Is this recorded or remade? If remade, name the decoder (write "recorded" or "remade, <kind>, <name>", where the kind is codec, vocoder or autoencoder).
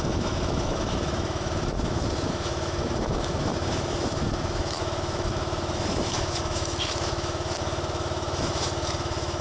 remade, autoencoder, DAC-VAE